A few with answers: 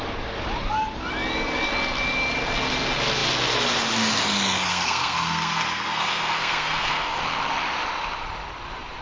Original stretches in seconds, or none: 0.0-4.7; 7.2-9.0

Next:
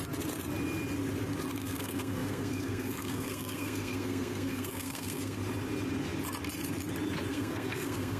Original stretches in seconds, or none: 0.0-1.6; 5.4-7.3

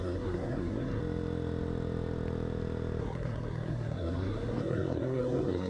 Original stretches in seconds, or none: 1.0-3.0

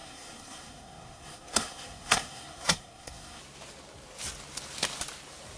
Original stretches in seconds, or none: 3.4-5.6

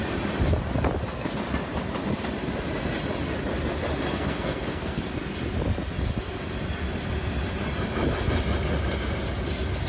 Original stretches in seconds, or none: 0.0-4.1; 5.0-9.9

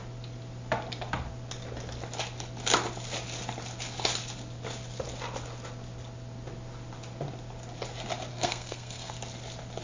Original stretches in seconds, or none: 0.0-8.3; 9.1-9.8

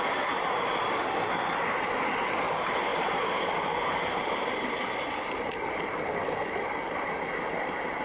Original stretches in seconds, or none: 0.0-8.0